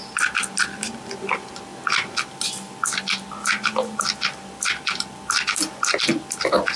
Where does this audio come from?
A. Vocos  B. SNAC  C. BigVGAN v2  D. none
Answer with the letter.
D